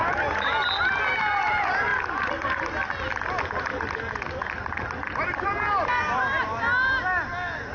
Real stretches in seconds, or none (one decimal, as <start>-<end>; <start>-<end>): 0.0-7.7